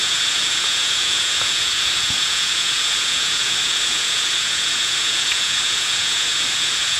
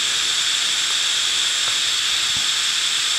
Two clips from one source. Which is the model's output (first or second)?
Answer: first